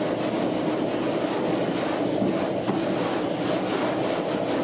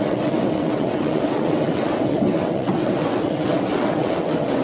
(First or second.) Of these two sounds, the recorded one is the first